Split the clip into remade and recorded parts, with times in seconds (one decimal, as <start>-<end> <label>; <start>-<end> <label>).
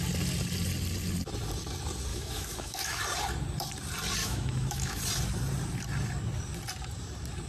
0.0-2.1 recorded; 2.1-3.0 remade; 3.0-4.2 recorded; 4.2-5.0 remade; 5.0-7.5 recorded